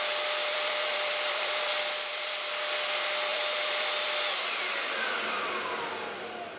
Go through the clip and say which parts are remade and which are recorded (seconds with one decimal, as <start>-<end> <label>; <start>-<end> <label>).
0.0-0.5 recorded; 0.5-2.5 remade; 2.5-3.3 recorded; 3.3-4.2 remade; 4.2-6.6 recorded